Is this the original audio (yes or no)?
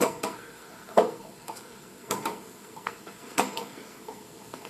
no